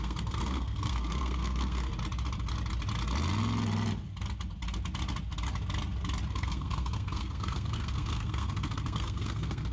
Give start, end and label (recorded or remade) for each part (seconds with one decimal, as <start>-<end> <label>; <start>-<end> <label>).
0.0-1.9 remade; 1.9-6.3 recorded; 6.3-9.7 remade